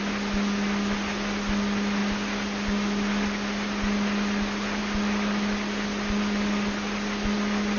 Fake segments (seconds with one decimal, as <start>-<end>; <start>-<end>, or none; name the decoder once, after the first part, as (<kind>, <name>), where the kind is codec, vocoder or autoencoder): none